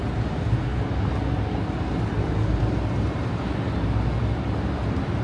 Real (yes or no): yes